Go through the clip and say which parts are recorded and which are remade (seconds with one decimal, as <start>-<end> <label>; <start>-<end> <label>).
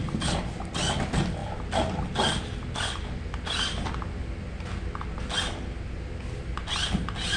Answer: 0.0-7.4 recorded